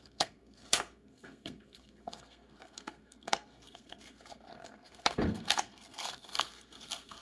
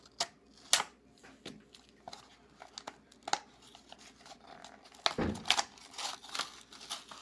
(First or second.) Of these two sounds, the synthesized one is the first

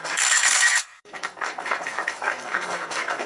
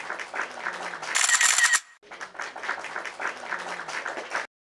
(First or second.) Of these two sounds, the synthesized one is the first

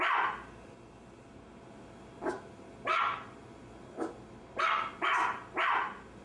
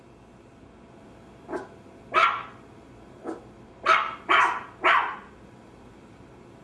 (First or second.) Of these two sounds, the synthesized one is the second